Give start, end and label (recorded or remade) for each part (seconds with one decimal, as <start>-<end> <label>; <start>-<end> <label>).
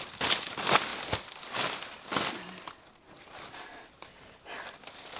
0.0-5.2 recorded